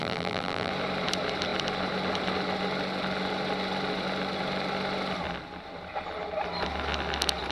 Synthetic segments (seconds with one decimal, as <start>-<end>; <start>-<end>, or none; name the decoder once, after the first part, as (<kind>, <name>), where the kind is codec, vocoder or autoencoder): 0.0-0.7 (vocoder, BigVGAN v2)